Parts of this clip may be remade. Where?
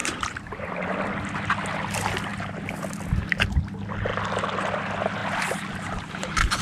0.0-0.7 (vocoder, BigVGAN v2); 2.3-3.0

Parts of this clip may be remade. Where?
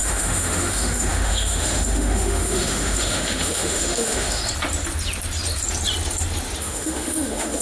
0.0-4.4 (autoencoder, DAC-VAE); 6.6-7.6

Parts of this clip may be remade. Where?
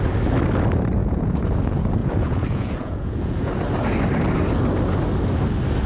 1.0-1.6 (vocoder, Vocos); 2.0-3.5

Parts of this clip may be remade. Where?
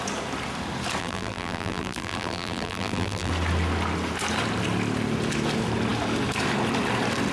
1.0-3.3 (vocoder, BigVGAN v2)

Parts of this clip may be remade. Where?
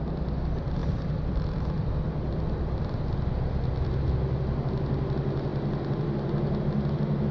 none